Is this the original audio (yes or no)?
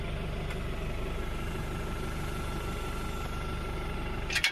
yes